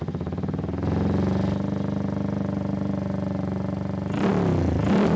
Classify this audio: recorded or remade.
recorded